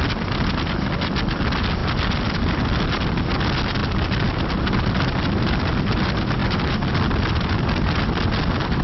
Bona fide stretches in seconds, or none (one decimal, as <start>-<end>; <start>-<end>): 0.0-3.8; 4.5-8.8